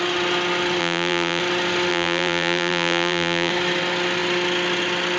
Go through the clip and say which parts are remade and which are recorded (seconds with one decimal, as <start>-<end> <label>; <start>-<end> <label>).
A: 0.0-0.8 recorded; 0.8-1.4 remade; 1.4-1.9 recorded; 1.9-3.5 remade; 3.5-5.2 recorded